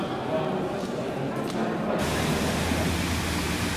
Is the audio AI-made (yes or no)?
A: no